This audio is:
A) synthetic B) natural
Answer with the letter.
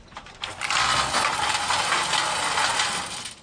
B